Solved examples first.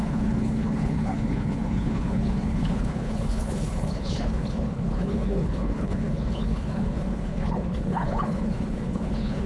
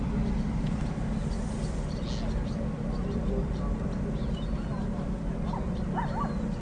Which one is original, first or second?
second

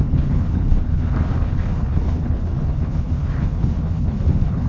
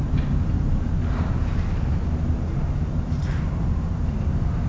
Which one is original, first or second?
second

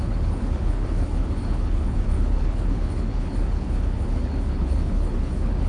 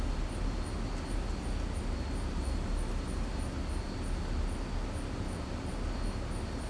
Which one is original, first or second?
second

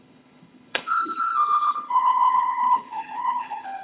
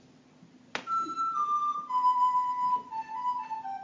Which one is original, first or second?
second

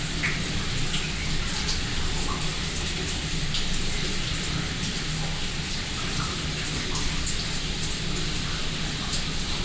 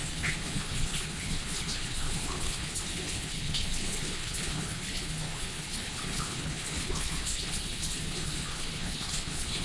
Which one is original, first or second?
first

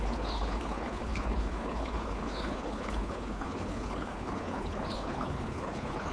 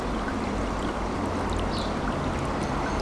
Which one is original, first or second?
second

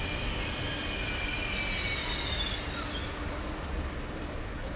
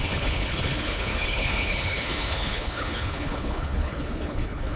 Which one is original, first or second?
first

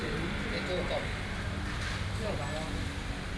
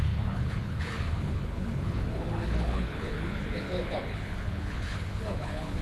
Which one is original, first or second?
first